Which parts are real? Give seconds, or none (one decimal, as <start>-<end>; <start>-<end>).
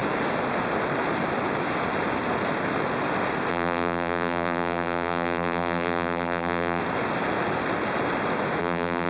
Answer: 0.0-3.5; 6.8-8.6